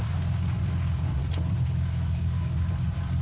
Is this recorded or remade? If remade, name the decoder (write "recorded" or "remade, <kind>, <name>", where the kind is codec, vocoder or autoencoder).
recorded